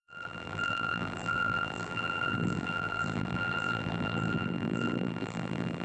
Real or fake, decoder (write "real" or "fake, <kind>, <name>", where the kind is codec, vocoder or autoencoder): fake, vocoder, BigVGAN v2